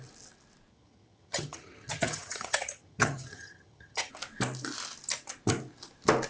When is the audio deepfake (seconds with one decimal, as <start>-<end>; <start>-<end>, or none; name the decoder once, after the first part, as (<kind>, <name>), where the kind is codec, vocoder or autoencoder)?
0.7-4.1 (vocoder, HiFi-GAN)